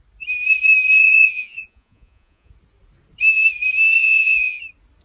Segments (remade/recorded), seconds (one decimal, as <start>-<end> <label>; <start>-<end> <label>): 0.0-1.0 recorded; 1.0-2.5 remade; 2.5-4.0 recorded; 4.0-4.6 remade; 4.6-5.0 recorded